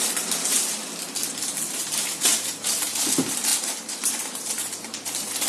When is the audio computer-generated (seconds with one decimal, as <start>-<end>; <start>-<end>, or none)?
0.0-0.8; 1.7-5.5